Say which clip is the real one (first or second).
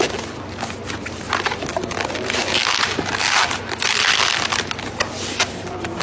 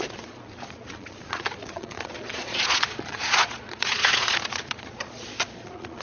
first